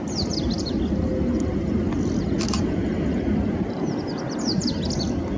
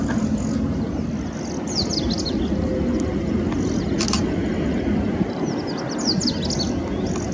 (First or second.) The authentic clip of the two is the second